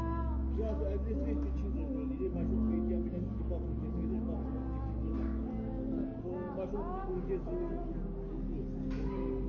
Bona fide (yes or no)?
yes